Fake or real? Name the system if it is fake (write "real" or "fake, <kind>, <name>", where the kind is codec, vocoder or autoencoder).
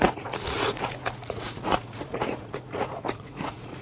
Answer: fake, vocoder, Vocos